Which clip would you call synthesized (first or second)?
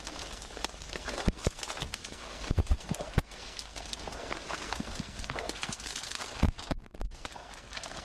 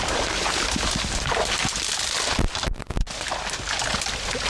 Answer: first